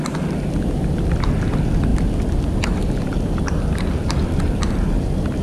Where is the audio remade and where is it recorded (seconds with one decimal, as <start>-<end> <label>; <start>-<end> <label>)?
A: 0.0-5.4 recorded